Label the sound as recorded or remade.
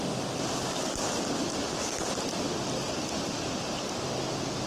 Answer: recorded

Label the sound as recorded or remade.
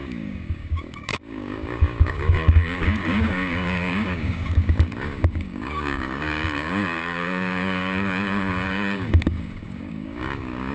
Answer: remade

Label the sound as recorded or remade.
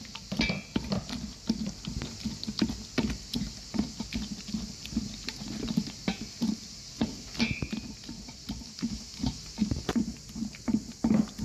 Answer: recorded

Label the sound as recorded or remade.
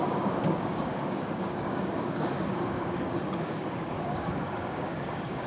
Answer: remade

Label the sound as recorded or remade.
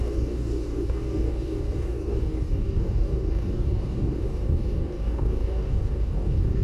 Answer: remade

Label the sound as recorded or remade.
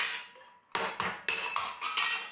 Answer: recorded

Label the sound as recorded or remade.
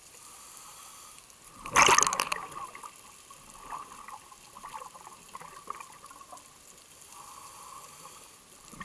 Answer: recorded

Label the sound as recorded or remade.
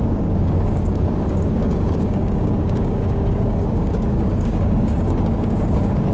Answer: remade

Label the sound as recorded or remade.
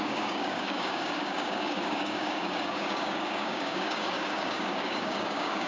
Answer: remade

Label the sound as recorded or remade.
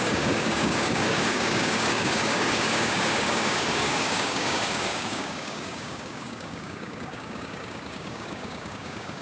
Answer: remade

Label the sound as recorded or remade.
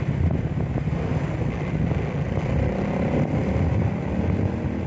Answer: recorded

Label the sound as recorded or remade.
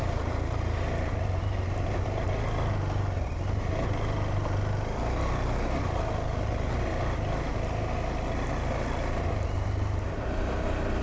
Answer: recorded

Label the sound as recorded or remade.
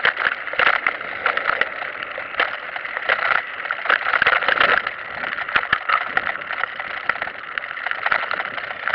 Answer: recorded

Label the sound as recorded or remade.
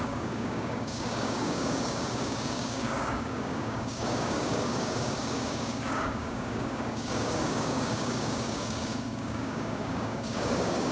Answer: remade